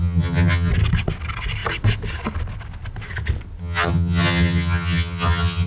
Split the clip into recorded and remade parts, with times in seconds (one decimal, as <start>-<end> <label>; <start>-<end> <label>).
0.0-0.7 remade; 0.7-3.6 recorded; 3.6-5.7 remade

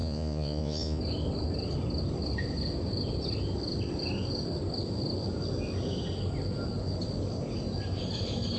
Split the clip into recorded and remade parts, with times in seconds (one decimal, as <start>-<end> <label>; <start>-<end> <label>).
0.0-1.0 remade; 1.0-8.6 recorded

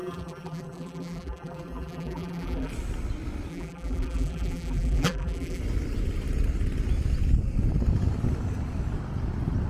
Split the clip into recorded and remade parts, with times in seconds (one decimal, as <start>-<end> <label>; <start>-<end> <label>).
0.0-2.7 remade; 2.7-3.5 recorded; 3.5-5.6 remade; 5.6-9.7 recorded

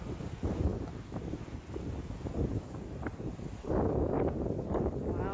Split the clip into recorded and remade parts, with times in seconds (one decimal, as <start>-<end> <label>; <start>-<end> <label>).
0.0-0.7 recorded; 0.7-1.3 remade; 1.3-3.1 recorded; 3.1-3.7 remade; 3.7-5.3 recorded